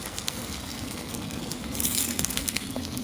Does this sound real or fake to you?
fake